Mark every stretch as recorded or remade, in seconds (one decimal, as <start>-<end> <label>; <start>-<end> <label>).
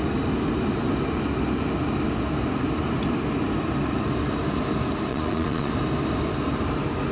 0.0-5.1 recorded; 5.1-5.7 remade; 5.7-7.1 recorded